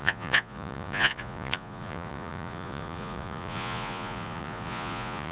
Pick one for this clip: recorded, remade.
remade